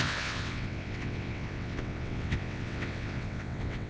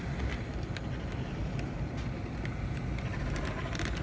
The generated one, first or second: first